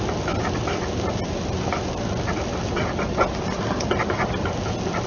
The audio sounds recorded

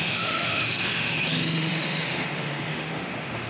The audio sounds remade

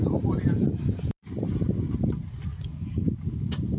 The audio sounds recorded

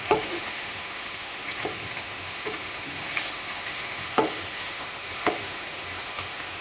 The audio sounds remade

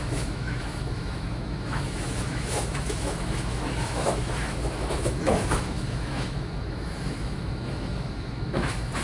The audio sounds remade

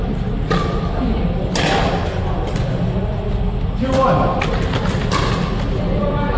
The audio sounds recorded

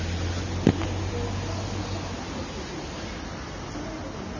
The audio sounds recorded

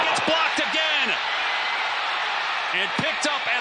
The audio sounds recorded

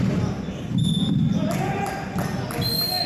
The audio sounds recorded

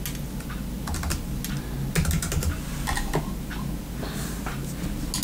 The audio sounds recorded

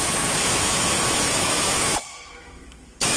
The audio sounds remade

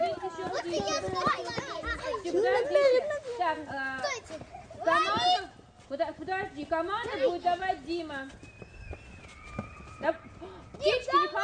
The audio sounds recorded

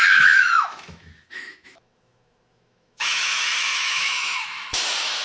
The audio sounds remade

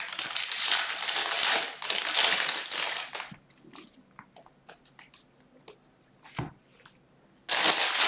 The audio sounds recorded